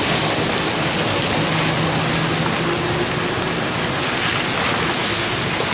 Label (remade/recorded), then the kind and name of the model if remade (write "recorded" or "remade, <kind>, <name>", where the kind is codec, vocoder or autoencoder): recorded